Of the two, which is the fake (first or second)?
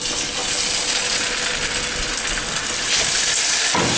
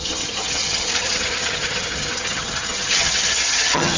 second